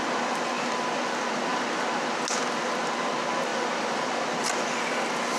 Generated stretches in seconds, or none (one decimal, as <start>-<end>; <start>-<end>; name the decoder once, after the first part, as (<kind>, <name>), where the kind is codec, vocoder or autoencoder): 3.5-4.1 (vocoder, BigVGAN v2)